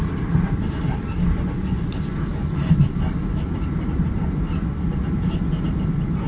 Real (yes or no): yes